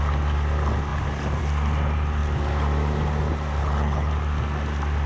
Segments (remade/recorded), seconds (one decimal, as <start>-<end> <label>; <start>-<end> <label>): 0.0-3.6 recorded; 3.6-4.1 remade; 4.1-5.1 recorded